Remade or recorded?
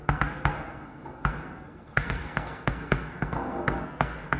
remade